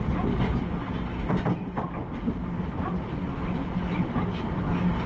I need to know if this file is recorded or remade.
recorded